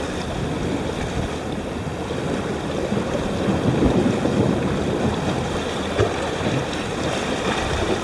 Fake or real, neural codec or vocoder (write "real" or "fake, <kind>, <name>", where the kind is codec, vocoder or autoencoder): real